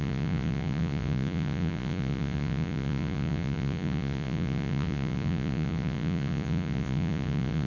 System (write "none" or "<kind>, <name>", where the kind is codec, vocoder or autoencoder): vocoder, Vocos